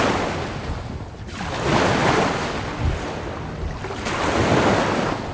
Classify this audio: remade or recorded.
recorded